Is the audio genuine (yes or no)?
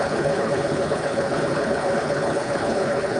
no